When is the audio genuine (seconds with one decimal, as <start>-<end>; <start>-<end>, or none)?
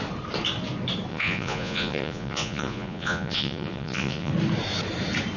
0.0-1.1; 4.3-5.4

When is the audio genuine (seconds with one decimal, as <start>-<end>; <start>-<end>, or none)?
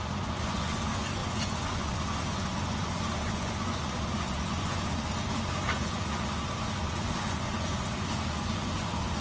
5.1-5.7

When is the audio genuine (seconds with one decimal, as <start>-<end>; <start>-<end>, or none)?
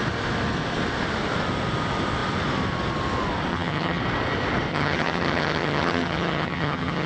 0.0-3.5; 4.0-4.7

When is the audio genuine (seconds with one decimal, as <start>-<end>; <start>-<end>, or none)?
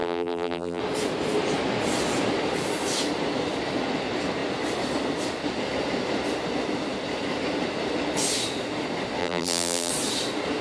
0.8-9.2; 9.9-10.6